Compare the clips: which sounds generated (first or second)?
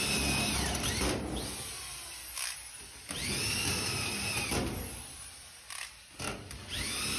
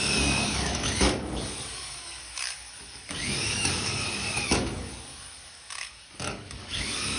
second